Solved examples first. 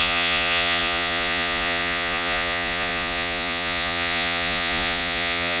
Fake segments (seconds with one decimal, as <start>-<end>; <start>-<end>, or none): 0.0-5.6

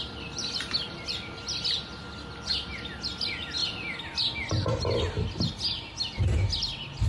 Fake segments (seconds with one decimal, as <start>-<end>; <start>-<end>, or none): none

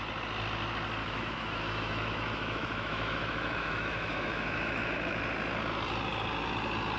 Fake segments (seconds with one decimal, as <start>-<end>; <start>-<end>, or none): 1.0-5.2

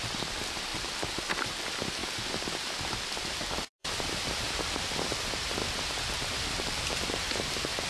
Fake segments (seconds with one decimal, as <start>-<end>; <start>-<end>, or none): 0.7-1.5; 2.0-4.3

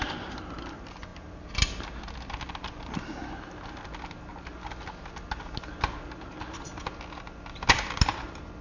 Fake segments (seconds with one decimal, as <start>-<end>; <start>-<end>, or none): none